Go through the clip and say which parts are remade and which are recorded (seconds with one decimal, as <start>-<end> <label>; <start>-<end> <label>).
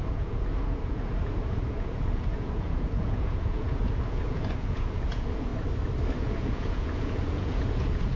0.0-5.5 remade; 5.5-6.2 recorded; 6.2-8.2 remade